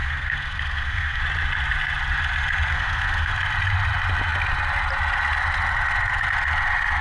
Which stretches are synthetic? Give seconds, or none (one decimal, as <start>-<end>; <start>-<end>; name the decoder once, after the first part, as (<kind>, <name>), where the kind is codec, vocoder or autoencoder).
0.0-1.2 (codec, SNAC); 2.7-3.3